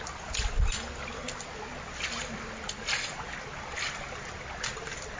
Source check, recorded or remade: recorded